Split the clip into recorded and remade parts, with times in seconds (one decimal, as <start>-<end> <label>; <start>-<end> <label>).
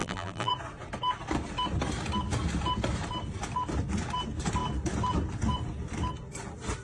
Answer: 0.0-0.5 remade; 0.5-6.8 recorded